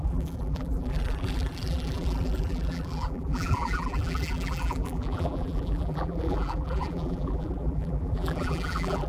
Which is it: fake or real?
fake